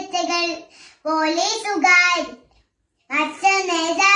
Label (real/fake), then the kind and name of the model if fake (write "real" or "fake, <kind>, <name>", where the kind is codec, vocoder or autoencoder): real